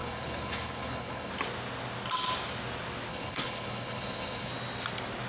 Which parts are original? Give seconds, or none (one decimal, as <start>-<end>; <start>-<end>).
1.3-3.1; 4.5-5.3